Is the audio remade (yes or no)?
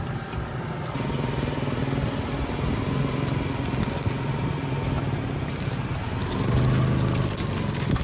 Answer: no